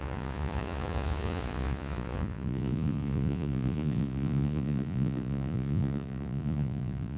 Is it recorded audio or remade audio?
remade